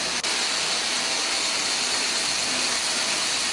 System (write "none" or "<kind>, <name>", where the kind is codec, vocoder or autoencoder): none